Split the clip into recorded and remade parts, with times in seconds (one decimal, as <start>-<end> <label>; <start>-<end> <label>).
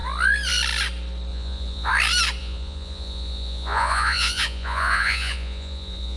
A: 0.0-1.3 recorded; 1.3-1.9 remade; 1.9-2.4 recorded; 2.4-6.2 remade